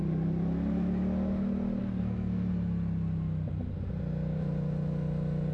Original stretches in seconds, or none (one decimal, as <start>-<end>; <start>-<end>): 0.0-1.8; 2.5-5.5